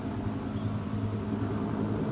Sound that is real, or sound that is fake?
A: real